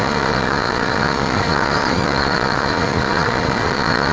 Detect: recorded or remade remade